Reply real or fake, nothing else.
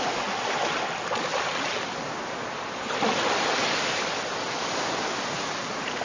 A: real